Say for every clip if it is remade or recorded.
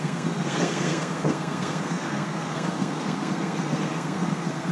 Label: remade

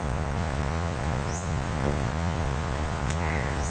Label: remade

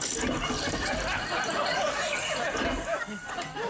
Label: recorded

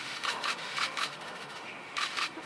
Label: remade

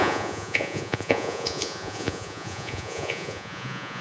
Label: remade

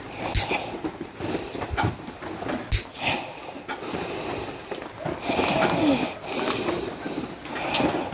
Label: recorded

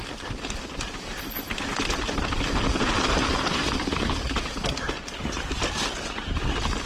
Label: recorded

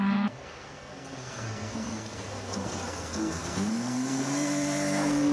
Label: remade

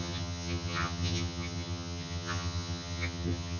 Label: remade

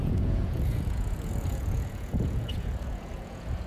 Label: remade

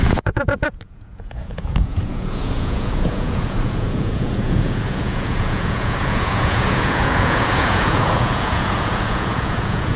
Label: remade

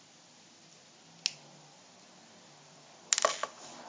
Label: recorded